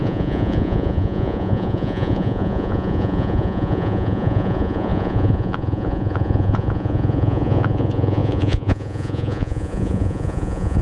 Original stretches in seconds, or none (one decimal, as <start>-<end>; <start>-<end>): none

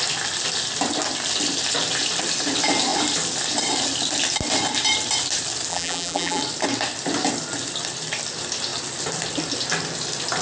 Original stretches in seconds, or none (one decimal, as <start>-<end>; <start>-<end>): 0.0-5.7; 6.4-10.4